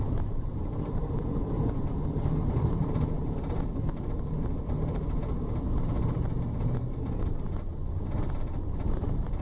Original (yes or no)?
no